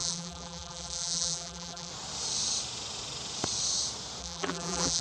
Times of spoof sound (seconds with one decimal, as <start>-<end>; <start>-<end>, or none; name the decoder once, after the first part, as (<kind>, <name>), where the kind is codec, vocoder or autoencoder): 0.0-1.9 (vocoder, BigVGAN v2); 4.2-5.0